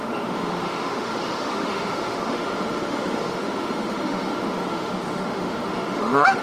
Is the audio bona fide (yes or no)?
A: no